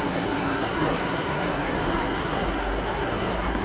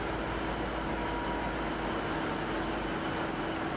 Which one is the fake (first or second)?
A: first